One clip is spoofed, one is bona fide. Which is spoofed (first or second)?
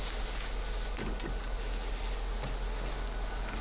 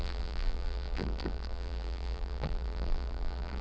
second